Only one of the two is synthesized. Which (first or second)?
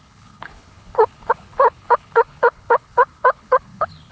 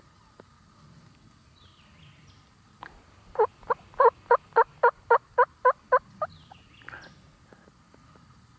first